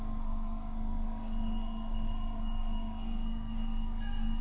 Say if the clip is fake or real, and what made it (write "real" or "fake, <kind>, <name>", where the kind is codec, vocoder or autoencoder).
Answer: fake, codec, SNAC